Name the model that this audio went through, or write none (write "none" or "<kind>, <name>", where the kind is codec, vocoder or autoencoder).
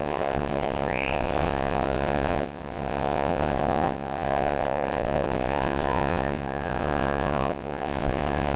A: vocoder, WaveNeXt